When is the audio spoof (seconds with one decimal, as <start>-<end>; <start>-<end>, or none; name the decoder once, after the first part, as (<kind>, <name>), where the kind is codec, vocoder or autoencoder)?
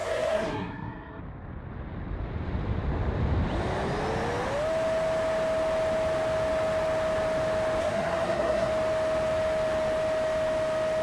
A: 0.0-1.2 (codec, SNAC); 7.8-8.7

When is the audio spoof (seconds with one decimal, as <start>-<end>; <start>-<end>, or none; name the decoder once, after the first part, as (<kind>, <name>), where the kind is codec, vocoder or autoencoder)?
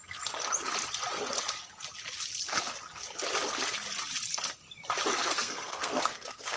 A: 5.2-6.6 (codec, SNAC)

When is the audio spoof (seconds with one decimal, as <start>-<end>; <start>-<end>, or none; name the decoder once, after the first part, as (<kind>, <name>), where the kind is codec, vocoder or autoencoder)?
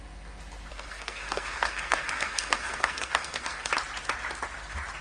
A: 0.7-3.7 (codec, SNAC)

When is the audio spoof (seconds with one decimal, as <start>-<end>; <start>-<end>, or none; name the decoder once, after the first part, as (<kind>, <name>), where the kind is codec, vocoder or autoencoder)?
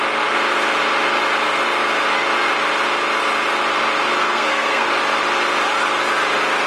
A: 4.2-4.9 (codec, SNAC)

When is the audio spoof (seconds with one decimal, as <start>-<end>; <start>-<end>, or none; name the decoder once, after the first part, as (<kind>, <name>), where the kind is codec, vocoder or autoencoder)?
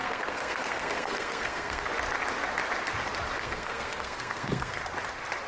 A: 0.0-1.9 (codec, SNAC); 3.4-4.8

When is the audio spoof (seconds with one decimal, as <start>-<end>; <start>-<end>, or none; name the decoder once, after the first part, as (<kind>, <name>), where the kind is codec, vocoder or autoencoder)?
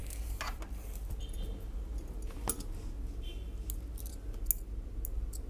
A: none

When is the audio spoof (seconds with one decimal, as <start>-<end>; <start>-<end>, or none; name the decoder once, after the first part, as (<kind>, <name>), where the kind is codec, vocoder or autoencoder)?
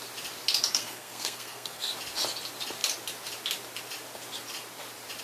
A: 0.7-1.9 (codec, SNAC)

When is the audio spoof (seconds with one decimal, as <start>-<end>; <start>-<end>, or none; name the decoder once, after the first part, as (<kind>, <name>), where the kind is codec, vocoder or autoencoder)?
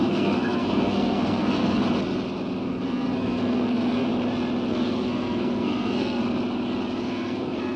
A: 0.0-1.8 (codec, SNAC); 2.7-4.1; 4.7-6.2; 7.0-7.8